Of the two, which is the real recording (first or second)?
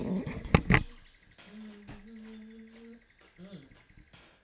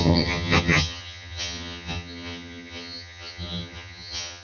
first